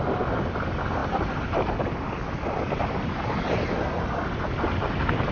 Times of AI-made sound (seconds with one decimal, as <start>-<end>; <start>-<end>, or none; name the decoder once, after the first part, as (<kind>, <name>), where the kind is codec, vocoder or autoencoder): none